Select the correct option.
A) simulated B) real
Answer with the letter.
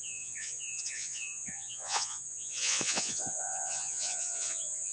A